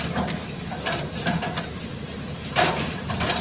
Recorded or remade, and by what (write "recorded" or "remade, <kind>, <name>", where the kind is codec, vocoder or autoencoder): recorded